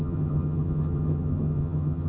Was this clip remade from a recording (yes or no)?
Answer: yes